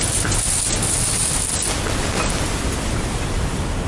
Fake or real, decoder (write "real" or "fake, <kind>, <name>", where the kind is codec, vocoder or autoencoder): real